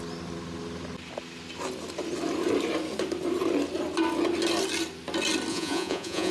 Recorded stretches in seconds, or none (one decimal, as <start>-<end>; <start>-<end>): 0.0-5.5